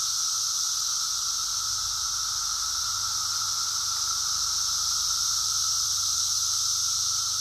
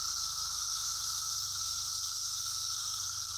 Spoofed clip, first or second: second